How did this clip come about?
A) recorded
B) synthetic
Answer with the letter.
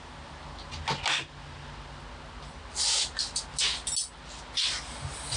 A